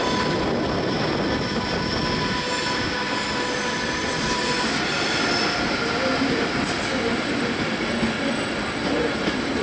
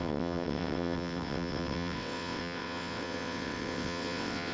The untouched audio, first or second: first